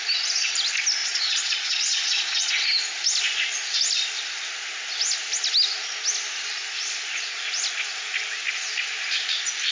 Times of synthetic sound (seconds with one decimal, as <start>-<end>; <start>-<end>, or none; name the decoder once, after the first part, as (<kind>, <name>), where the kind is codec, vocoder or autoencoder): 1.0-2.5 (vocoder, Vocos)